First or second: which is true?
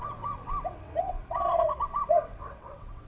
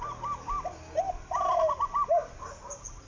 second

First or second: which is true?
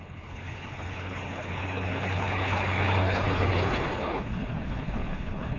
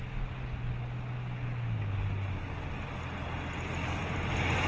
second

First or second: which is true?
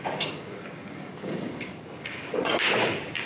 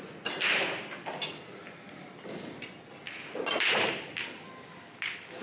second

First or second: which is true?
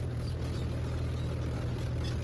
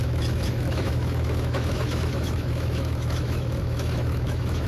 first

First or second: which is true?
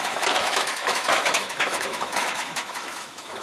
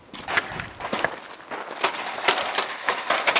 second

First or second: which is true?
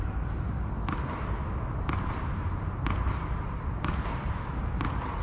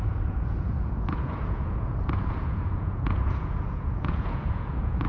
first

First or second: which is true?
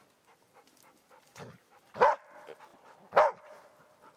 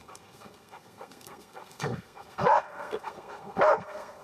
first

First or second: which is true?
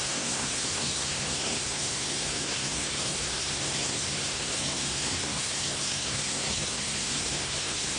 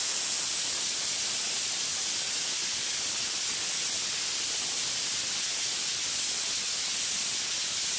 second